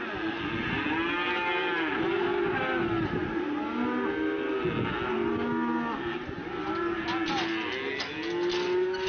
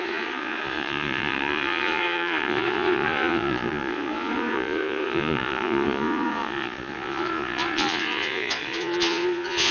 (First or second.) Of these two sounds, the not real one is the second